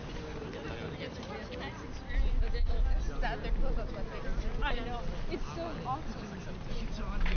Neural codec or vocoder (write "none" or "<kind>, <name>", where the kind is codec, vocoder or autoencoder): none